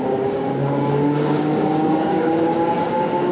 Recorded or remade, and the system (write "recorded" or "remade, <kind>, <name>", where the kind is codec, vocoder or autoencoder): remade, codec, DAC